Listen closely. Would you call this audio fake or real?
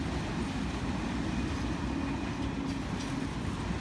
real